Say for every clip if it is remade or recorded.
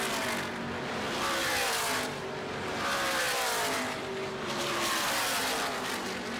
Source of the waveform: recorded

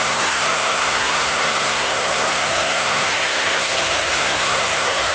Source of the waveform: remade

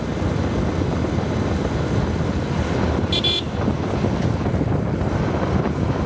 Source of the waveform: recorded